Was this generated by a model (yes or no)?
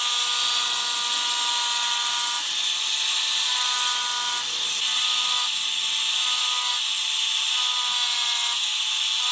no